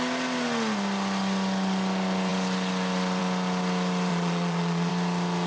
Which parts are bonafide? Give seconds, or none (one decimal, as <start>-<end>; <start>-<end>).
0.0-4.1; 4.9-5.5